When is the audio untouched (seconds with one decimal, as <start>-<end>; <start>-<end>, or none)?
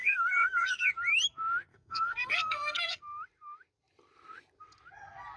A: 0.9-1.7; 3.0-5.4